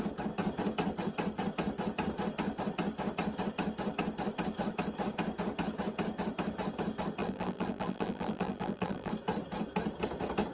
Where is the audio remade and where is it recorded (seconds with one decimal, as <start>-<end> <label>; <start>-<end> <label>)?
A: 0.0-7.2 recorded; 7.2-9.1 remade; 9.1-10.5 recorded